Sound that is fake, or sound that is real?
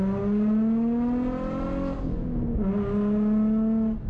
real